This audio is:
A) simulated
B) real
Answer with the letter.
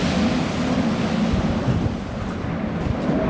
B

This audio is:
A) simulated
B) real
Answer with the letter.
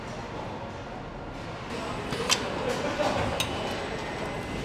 B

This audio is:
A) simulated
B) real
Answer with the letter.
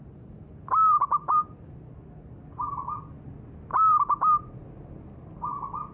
B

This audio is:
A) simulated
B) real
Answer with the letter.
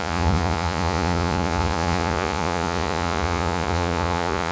A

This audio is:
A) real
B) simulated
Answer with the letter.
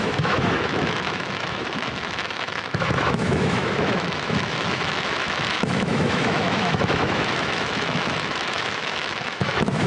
B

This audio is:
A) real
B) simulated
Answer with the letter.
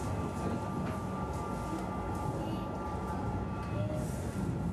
A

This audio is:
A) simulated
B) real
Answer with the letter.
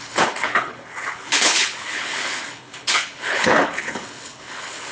A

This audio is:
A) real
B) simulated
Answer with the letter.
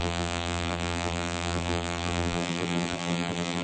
B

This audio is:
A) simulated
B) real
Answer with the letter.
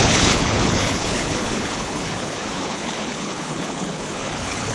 A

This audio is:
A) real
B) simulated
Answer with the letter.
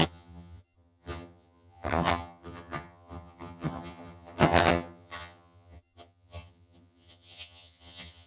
B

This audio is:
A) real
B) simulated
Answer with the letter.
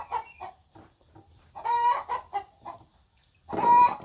B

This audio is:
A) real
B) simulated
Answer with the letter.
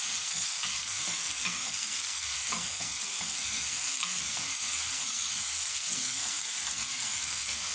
B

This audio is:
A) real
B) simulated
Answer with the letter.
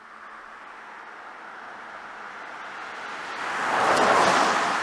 A